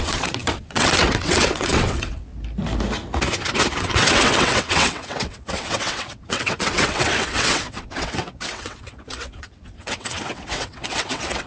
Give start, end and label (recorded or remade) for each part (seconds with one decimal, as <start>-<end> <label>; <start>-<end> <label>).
0.0-2.3 remade; 2.3-3.8 recorded; 3.8-11.5 remade